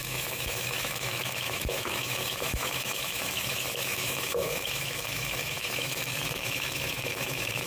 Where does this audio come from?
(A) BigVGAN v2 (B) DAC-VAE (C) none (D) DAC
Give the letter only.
B